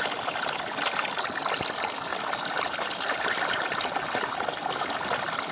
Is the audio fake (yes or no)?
no